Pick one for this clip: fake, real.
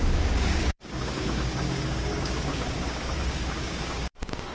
fake